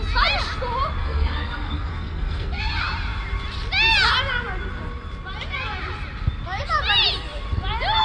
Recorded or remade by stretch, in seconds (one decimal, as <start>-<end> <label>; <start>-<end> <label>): 0.0-1.0 recorded; 1.0-2.6 remade; 2.6-8.0 recorded